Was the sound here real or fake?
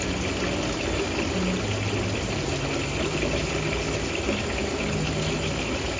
real